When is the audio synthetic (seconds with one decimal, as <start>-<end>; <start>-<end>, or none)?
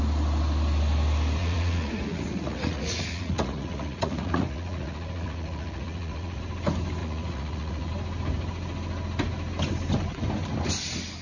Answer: 1.4-6.4; 7.0-7.9